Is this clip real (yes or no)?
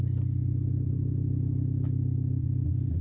yes